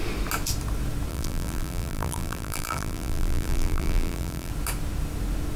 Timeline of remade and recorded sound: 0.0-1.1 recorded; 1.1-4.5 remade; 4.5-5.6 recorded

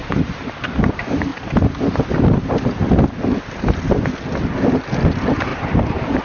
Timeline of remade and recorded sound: 0.0-0.5 remade; 0.5-5.5 recorded; 5.5-6.2 remade

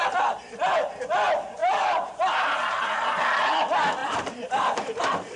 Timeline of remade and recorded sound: 0.0-1.6 recorded; 1.6-2.9 remade; 2.9-4.0 recorded; 4.0-5.0 remade; 5.0-5.4 recorded